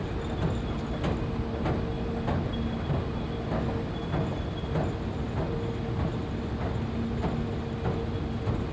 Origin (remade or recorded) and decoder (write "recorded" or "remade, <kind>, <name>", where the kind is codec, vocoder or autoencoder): recorded